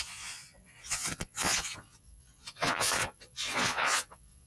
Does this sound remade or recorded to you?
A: remade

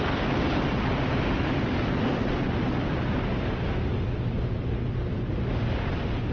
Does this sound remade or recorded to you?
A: recorded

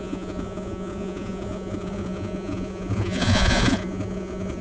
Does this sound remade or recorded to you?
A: remade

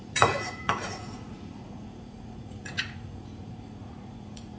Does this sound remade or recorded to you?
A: remade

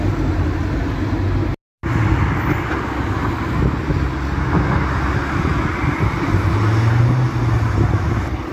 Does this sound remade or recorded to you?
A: recorded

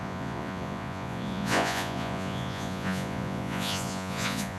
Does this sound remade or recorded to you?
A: remade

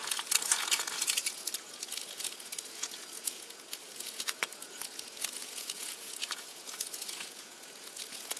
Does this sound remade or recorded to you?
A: remade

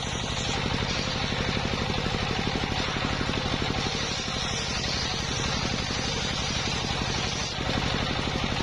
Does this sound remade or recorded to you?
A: recorded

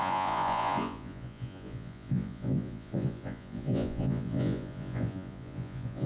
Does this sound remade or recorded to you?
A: remade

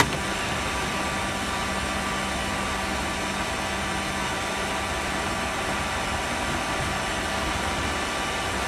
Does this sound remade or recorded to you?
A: recorded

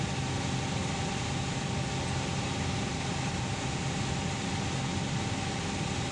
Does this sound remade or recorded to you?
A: recorded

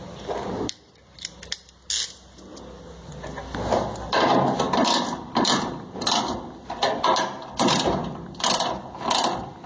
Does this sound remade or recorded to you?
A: recorded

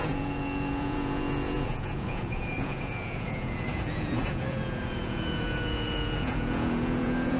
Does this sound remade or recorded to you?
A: remade